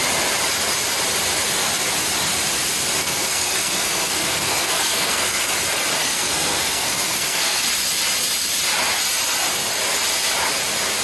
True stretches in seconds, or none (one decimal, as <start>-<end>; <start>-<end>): 0.0-3.0; 5.5-6.0; 7.6-11.0